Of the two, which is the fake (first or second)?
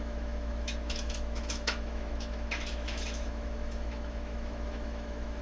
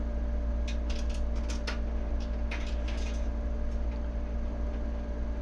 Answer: first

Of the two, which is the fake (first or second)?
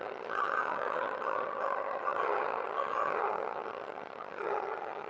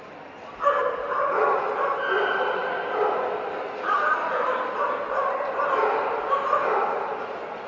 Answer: first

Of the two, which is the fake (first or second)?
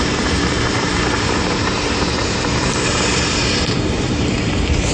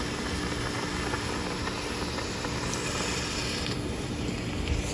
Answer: first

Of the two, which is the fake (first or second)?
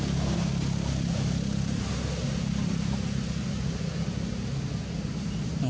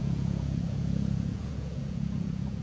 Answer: second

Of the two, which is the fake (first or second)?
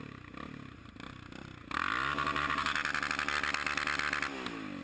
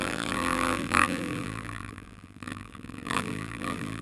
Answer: second